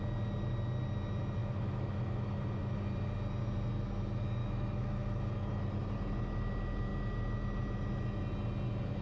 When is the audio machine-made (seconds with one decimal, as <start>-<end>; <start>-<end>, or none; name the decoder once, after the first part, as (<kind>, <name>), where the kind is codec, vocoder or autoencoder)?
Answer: 1.4-2.4 (autoencoder, DAC-VAE); 4.4-5.2